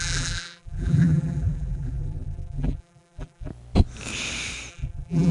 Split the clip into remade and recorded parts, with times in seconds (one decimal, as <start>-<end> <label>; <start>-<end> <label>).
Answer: 0.0-3.5 remade; 3.5-4.7 recorded; 4.7-5.3 remade